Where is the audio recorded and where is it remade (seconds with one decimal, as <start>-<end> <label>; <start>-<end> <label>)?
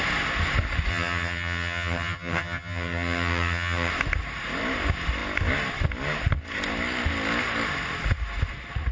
0.0-0.9 recorded; 0.9-3.9 remade; 3.9-8.9 recorded